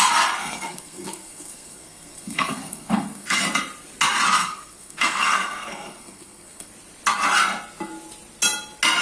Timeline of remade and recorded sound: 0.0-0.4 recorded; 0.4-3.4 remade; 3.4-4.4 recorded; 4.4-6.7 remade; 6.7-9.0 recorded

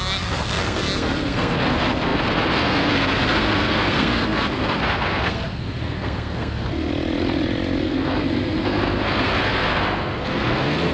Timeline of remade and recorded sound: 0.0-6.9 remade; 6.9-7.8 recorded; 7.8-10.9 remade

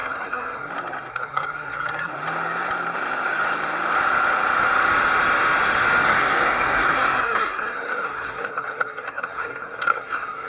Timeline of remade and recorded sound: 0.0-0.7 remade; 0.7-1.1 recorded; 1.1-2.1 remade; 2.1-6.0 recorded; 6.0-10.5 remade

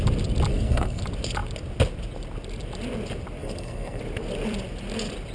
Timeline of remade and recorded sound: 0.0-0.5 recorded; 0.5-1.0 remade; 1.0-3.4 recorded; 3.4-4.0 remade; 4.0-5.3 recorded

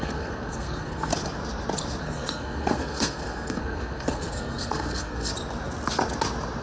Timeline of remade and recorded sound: 0.0-1.1 remade; 1.1-2.0 recorded; 2.0-5.3 remade; 5.3-6.6 recorded

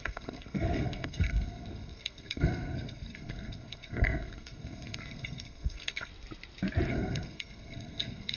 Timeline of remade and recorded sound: 0.0-6.1 remade; 6.1-6.9 recorded; 6.9-8.4 remade

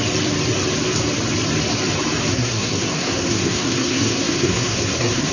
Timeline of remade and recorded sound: 0.0-2.3 recorded; 2.3-5.3 remade

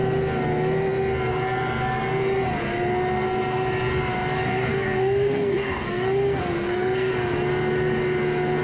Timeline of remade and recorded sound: 0.0-4.4 recorded; 4.4-7.1 remade; 7.1-8.6 recorded